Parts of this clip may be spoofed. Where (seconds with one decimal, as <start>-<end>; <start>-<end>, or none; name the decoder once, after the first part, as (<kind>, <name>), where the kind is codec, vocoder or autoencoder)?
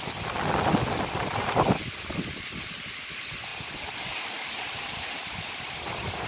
none